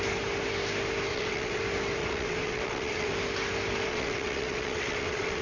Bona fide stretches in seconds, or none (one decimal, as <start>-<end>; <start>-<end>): 0.0-1.1; 1.6-2.0; 3.1-3.9